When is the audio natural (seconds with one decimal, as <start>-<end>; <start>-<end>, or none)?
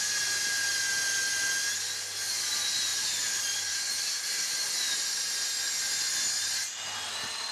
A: 0.0-2.9; 3.4-7.5